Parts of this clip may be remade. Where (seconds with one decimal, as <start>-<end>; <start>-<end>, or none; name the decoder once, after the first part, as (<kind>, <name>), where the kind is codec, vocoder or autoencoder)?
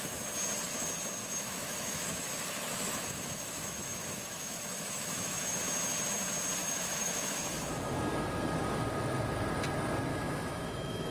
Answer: 1.2-5.6 (autoencoder, DAC-VAE); 6.6-7.7; 10.1-11.1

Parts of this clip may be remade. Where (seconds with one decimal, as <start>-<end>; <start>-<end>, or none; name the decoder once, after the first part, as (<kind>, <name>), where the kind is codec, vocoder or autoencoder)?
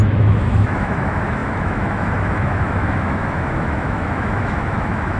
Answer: 0.0-5.2 (autoencoder, DAC-VAE)